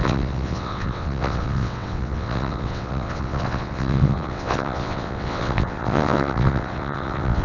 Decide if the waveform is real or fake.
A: fake